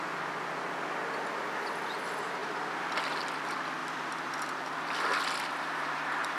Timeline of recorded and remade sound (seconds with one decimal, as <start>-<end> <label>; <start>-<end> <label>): 0.0-2.4 recorded; 2.4-3.2 remade; 3.2-3.8 recorded; 3.8-6.4 remade